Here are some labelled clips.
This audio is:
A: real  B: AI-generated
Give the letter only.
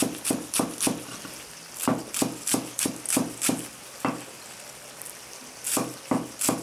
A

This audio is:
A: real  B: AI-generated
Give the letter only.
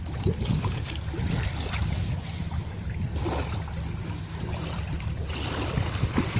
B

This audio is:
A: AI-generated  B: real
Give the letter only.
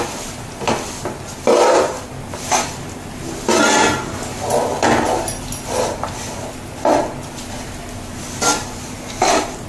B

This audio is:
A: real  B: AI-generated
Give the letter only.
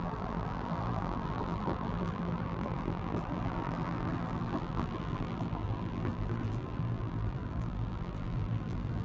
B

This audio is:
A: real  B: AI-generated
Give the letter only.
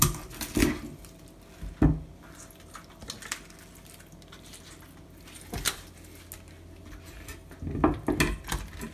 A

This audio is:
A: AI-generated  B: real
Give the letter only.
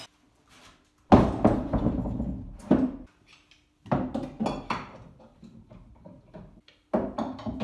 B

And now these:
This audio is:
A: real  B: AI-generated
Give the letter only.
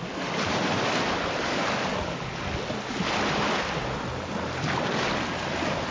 A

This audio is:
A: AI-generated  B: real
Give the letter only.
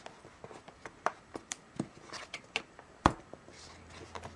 B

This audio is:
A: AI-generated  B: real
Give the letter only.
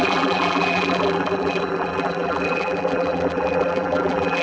A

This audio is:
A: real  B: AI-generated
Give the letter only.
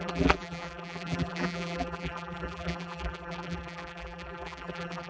B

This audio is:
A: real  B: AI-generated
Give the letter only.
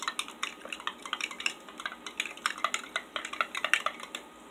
A